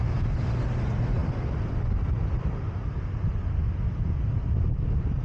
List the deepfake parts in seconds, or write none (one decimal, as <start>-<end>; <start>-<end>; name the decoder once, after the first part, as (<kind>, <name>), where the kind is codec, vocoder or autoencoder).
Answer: none